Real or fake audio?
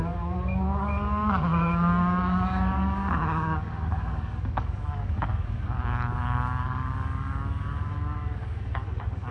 fake